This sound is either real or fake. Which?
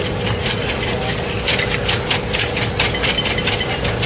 real